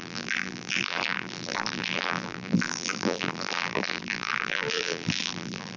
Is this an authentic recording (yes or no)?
no